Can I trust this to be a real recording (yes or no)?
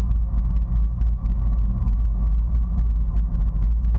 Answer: yes